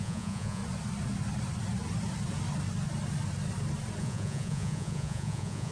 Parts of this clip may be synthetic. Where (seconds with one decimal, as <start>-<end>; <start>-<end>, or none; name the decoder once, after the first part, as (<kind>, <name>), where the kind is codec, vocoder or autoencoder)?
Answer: 0.0-0.6 (vocoder, Vocos); 4.0-5.7